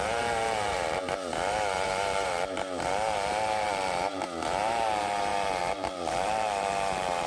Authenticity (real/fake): fake